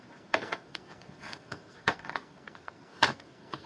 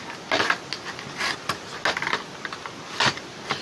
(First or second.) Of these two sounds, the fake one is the first